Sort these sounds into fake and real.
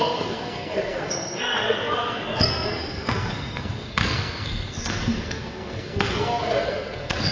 fake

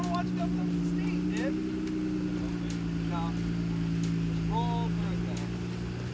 real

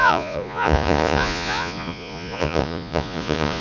fake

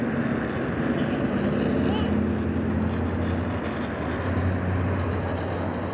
real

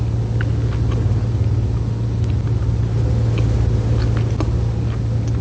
real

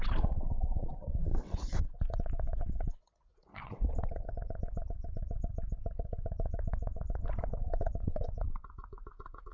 fake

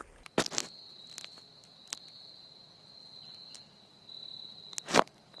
real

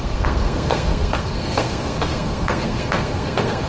fake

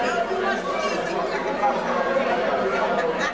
real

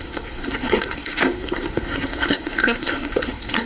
fake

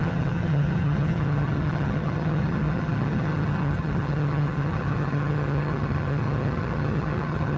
fake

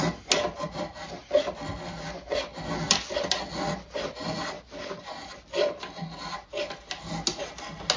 real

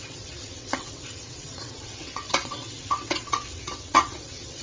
fake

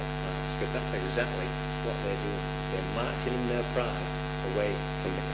real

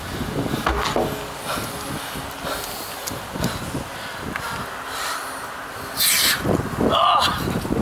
real